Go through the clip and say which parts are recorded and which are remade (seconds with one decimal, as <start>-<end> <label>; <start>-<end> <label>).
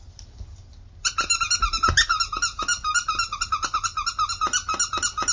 0.0-5.3 recorded